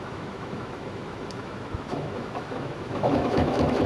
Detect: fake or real fake